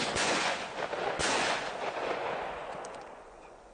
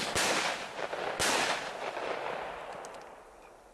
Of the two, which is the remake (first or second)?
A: first